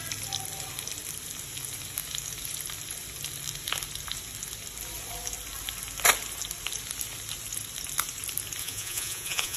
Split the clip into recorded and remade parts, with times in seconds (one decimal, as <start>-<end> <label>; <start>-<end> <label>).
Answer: 0.0-8.6 recorded; 8.6-9.6 remade